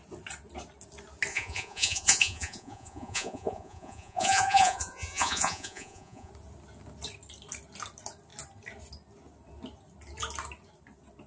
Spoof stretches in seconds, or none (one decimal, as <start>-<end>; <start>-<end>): 1.3-6.3